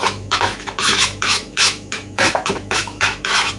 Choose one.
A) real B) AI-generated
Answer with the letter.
B